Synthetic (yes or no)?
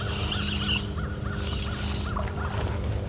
no